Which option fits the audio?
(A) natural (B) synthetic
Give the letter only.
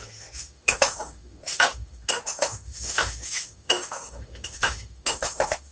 B